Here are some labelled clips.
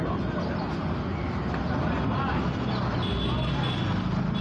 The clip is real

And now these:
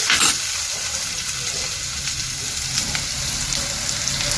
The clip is real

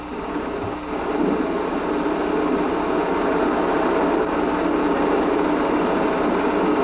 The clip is real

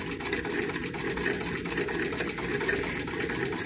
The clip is real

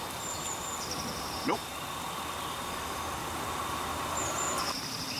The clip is real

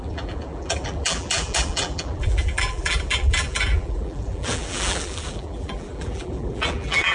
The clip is fake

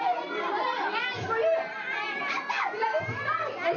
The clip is real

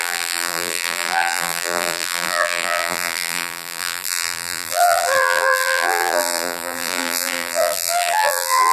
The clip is fake